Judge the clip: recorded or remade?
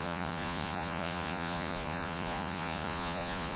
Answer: remade